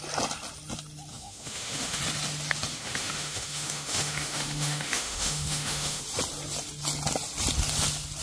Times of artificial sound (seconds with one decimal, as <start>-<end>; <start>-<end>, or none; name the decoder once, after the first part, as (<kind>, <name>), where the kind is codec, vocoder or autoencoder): 1.1-2.0 (autoencoder, DAC-VAE); 2.7-6.0